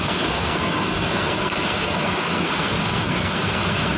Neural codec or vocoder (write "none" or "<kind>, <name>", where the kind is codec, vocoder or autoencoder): codec, SNAC